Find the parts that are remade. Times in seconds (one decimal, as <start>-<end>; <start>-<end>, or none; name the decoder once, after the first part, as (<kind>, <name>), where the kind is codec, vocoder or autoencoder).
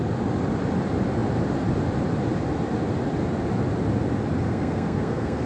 4.5-5.5 (codec, SNAC)